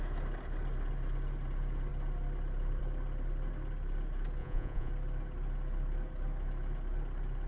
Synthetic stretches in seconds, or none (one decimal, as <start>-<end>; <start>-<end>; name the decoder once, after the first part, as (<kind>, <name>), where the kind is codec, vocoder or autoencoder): 4.4-4.9 (vocoder, Vocos)